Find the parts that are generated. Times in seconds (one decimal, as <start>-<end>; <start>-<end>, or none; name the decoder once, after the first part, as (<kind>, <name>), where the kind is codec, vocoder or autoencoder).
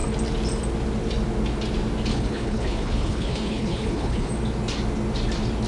2.1-4.3 (codec, HILCodec)